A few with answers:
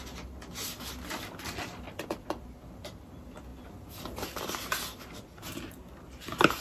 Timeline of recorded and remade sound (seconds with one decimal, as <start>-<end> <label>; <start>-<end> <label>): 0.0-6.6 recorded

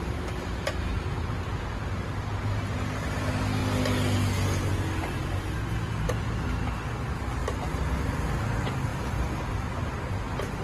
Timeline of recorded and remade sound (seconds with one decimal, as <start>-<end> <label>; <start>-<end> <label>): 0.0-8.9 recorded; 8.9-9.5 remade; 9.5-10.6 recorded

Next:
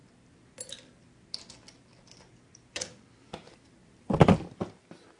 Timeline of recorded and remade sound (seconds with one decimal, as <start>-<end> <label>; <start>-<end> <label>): 0.0-3.1 remade; 3.1-3.8 recorded; 3.8-4.5 remade; 4.5-5.2 recorded

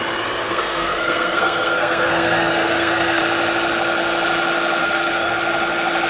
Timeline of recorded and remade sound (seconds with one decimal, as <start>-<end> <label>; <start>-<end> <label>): 0.0-0.4 recorded; 0.4-3.2 remade; 3.2-4.8 recorded; 4.8-5.3 remade; 5.3-6.1 recorded